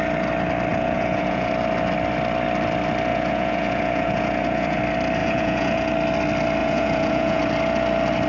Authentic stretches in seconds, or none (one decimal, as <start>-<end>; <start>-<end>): 0.0-0.7; 1.5-3.1; 4.8-5.2; 5.9-6.6; 7.4-8.3